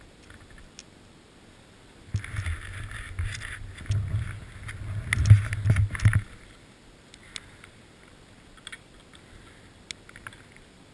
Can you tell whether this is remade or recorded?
recorded